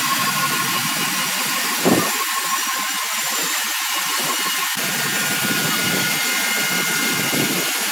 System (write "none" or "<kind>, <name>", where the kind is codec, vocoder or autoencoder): none